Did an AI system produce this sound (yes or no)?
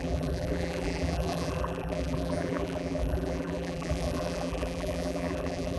yes